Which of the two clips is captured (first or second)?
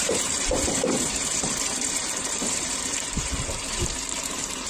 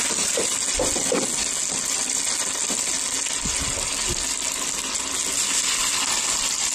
second